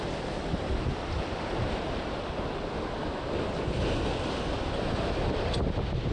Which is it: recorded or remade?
recorded